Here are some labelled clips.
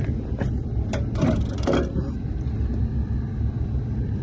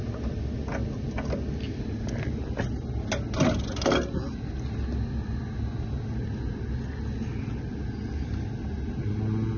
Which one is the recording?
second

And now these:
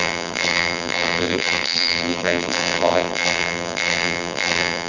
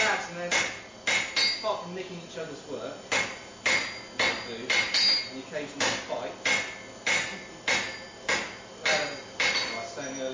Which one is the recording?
second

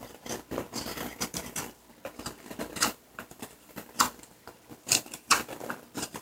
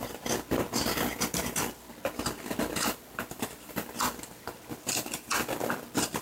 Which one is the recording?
second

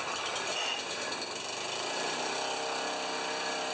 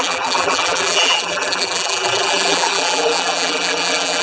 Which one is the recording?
first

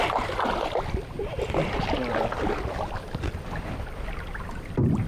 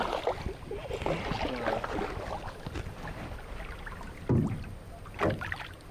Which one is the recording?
second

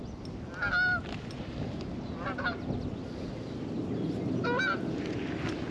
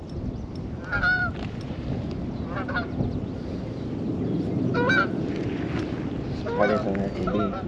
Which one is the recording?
first